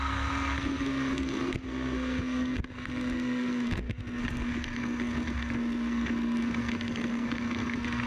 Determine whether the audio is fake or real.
fake